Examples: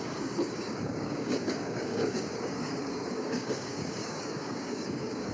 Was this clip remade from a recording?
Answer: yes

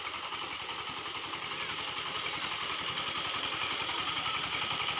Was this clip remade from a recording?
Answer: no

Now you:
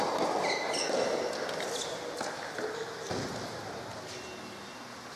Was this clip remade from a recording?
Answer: no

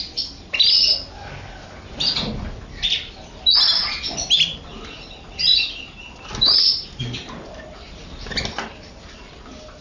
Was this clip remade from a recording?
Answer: no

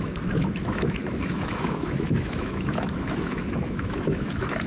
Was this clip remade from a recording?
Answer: yes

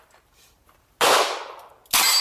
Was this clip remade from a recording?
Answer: no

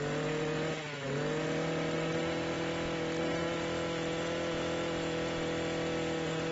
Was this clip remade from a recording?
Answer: no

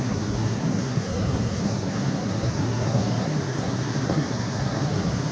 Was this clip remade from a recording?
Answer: yes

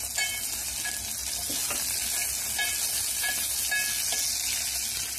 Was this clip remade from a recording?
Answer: no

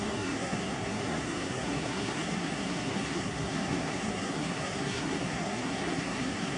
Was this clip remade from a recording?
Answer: yes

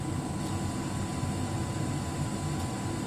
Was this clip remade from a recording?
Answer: no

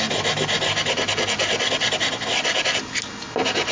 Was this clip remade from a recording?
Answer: no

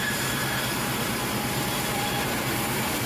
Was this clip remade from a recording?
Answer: yes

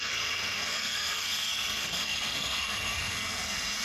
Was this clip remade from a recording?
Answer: yes